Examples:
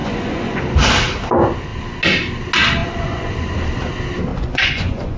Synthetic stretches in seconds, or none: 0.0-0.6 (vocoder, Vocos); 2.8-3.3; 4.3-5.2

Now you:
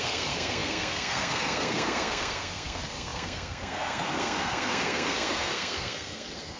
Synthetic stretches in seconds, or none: 0.0-6.6 (codec, SNAC)

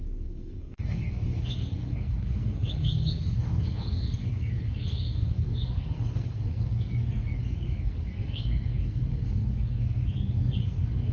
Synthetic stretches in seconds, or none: 0.0-11.1 (codec, SNAC)

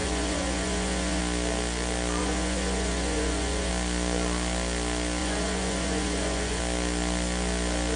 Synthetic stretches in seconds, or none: 0.0-1.2 (vocoder, Vocos); 2.2-3.7; 5.2-6.6

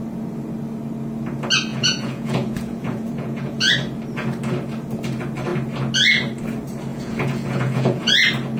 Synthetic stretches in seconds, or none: 1.7-3.6 (vocoder, Vocos); 6.9-8.1

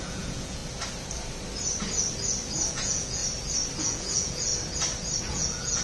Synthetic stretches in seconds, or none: 0.0-0.6 (vocoder, Vocos); 2.7-3.2; 3.8-4.5; 5.2-5.8